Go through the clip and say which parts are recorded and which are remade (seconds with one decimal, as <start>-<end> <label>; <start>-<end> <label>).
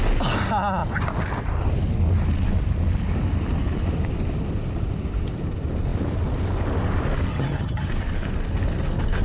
0.0-7.3 recorded; 7.3-7.9 remade; 7.9-9.2 recorded